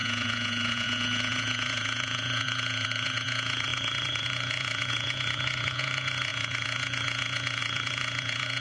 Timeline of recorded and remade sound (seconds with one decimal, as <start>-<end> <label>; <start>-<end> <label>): 0.0-8.6 remade